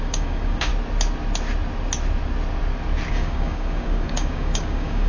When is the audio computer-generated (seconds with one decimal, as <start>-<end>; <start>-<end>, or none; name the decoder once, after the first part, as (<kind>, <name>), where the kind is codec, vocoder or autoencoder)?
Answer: 0.0-0.7 (codec, DAC); 3.1-5.1